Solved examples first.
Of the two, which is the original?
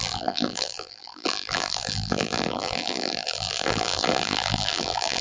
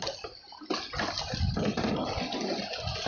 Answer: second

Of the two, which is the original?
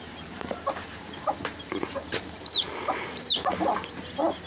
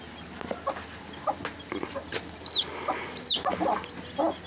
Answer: second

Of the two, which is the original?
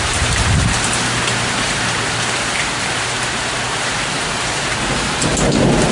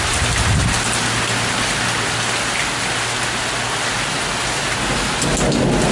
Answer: second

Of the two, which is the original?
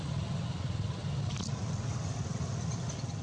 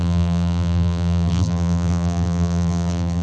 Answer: first